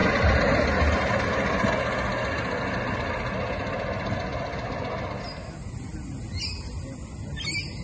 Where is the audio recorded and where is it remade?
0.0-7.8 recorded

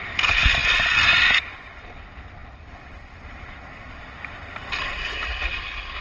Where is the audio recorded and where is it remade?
0.0-6.0 recorded

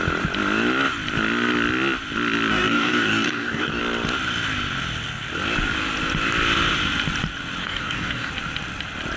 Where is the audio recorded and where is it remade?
0.0-2.5 recorded; 2.5-3.8 remade; 3.8-7.6 recorded; 7.6-8.3 remade; 8.3-9.2 recorded

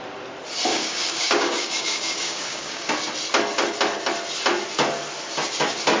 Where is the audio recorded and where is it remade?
0.0-0.7 recorded; 0.7-2.9 remade; 2.9-6.0 recorded

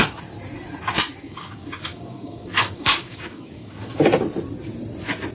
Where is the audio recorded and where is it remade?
0.0-1.2 recorded; 1.2-3.9 remade; 3.9-5.3 recorded

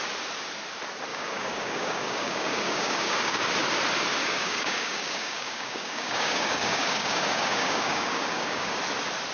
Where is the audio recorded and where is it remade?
0.0-1.1 recorded; 1.1-3.4 remade; 3.4-4.2 recorded; 4.2-8.8 remade; 8.8-9.3 recorded

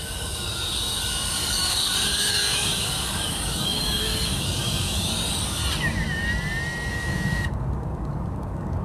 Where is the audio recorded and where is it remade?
0.0-5.6 remade; 5.6-6.9 recorded; 6.9-8.8 remade